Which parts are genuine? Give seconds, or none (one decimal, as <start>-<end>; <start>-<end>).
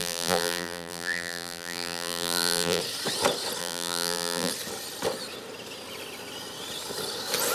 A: 2.8-3.6; 4.5-7.5